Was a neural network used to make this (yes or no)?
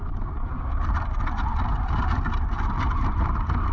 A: no